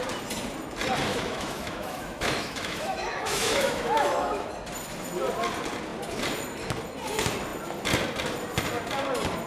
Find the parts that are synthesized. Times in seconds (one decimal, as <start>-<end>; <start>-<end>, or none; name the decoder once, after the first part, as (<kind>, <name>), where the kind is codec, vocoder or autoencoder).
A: 1.1-4.5 (autoencoder, DAC-VAE)